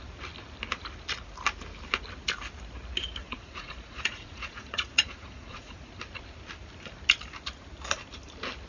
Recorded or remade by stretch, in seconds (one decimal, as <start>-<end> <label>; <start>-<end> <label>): 0.0-3.2 recorded; 3.2-5.9 remade; 5.9-8.7 recorded